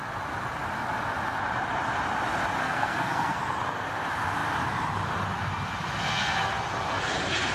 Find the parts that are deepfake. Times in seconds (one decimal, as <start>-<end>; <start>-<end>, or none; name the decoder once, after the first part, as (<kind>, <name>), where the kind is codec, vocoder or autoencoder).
2.6-3.4 (codec, SNAC)